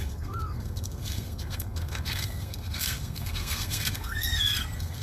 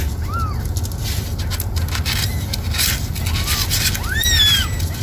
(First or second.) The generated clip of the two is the first